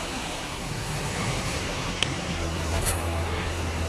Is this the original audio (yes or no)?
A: no